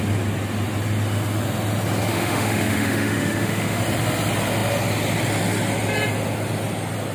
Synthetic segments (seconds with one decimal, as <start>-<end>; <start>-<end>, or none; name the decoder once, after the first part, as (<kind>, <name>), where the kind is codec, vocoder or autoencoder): 2.1-3.8 (autoencoder, DAC-VAE)

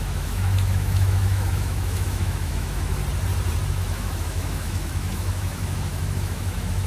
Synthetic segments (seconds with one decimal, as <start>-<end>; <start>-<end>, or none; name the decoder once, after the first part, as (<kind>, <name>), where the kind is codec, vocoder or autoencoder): 0.0-3.0 (autoencoder, DAC-VAE); 3.7-6.9

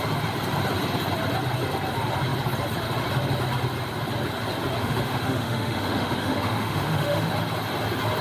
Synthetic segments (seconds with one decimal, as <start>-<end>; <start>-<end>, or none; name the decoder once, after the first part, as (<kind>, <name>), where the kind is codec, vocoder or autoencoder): 4.8-7.3 (autoencoder, DAC-VAE)

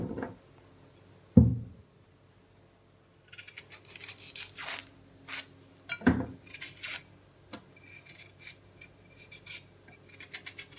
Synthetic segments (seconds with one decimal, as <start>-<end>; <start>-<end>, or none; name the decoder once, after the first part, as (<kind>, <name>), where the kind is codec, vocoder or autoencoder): none

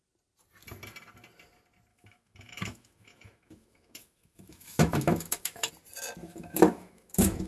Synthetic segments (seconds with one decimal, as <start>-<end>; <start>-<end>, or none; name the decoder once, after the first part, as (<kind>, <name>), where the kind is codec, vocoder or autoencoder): 1.9-5.7 (autoencoder, DAC-VAE); 6.2-7.5

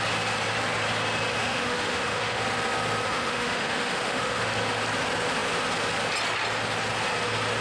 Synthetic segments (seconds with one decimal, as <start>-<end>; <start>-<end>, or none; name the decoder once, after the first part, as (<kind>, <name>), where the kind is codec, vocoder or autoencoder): 1.3-2.4 (autoencoder, DAC-VAE); 3.1-4.4

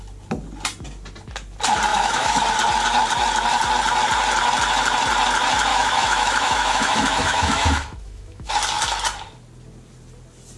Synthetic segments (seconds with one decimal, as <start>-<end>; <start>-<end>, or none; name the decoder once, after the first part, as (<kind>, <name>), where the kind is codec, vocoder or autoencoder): 1.9-2.4 (autoencoder, DAC-VAE); 5.7-8.5

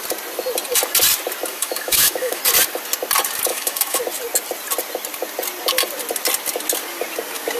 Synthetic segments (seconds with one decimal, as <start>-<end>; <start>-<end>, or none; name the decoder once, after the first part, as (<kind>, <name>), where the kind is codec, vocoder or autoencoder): 1.5-2.4 (autoencoder, DAC-VAE); 3.5-4.0